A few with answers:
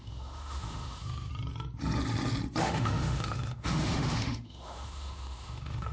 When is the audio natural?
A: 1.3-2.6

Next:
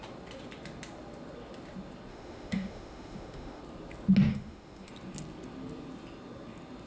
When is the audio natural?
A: 0.0-2.1; 3.6-4.3; 4.9-6.9

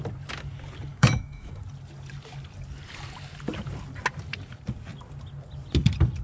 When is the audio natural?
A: 0.0-0.9; 1.5-6.2